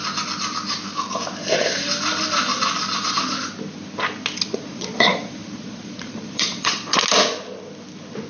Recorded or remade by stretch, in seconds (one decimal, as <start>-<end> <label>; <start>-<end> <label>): 0.0-4.5 recorded; 4.5-7.0 remade; 7.0-8.3 recorded